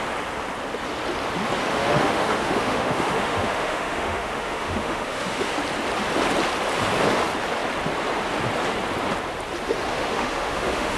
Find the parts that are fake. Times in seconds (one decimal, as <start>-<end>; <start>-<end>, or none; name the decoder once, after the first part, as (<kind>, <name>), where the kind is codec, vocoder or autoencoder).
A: 1.7-5.5 (autoencoder, DAC-VAE); 9.9-11.0